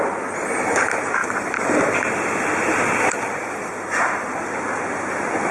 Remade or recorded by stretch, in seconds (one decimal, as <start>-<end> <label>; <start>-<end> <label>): 0.0-1.2 recorded; 1.2-4.5 remade; 4.5-5.5 recorded

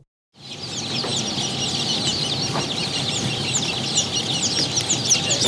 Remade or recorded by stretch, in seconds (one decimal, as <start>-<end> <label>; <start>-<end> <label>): 0.0-5.5 recorded

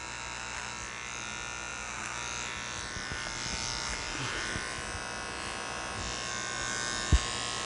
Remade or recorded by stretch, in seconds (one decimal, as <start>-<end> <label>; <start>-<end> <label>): 0.0-7.6 recorded

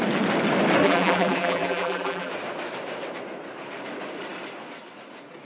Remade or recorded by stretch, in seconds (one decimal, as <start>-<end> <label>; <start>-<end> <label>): 0.0-0.8 recorded; 0.8-2.3 remade; 2.3-5.4 recorded

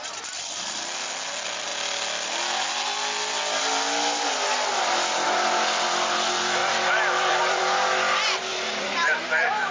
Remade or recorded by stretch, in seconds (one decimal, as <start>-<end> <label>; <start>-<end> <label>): 0.0-6.6 recorded; 6.6-7.6 remade; 7.6-8.5 recorded; 8.5-9.7 remade

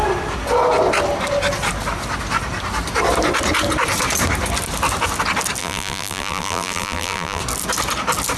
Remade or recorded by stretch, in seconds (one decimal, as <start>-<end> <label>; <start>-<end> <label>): 0.0-5.6 recorded; 5.6-7.4 remade; 7.4-8.4 recorded

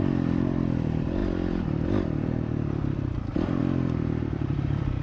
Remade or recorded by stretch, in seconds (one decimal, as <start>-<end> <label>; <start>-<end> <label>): 0.0-5.0 remade

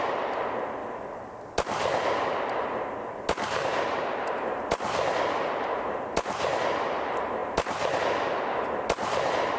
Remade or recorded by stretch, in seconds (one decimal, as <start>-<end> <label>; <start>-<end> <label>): 0.0-9.6 recorded